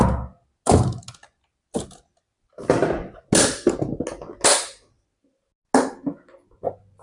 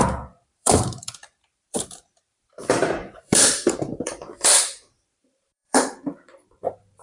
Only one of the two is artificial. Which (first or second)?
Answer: second